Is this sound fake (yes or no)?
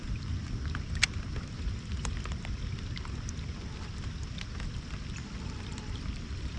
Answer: no